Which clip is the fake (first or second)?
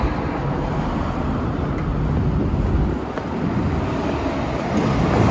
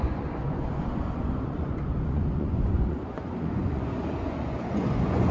second